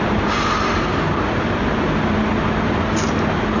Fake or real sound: real